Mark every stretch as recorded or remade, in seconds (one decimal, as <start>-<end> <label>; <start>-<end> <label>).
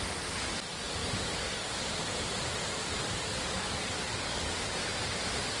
0.0-1.0 recorded; 1.0-1.8 remade; 1.8-3.3 recorded; 3.3-5.1 remade; 5.1-5.6 recorded